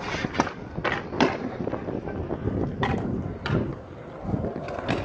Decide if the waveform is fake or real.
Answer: real